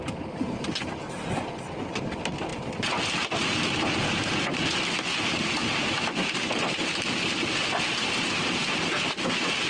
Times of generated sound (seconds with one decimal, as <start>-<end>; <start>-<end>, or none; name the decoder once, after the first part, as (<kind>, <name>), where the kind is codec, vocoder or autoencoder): none